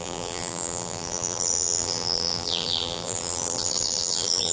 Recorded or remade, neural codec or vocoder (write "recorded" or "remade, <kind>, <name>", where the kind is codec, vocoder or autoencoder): remade, vocoder, BigVGAN v2